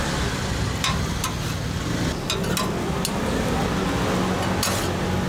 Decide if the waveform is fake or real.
real